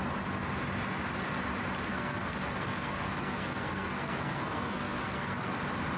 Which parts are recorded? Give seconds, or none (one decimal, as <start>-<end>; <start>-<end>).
0.0-1.9; 5.5-6.0